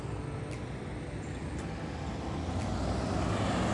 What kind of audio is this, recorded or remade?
recorded